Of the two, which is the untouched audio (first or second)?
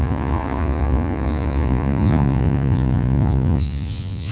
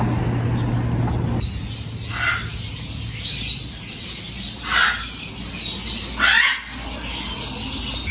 second